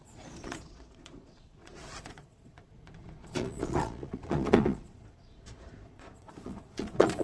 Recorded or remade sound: remade